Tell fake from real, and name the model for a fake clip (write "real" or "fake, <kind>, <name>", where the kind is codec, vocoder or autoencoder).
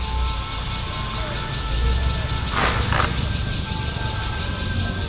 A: real